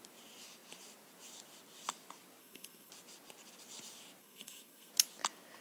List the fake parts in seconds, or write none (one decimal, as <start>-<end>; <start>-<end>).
2.4-2.9; 4.2-4.9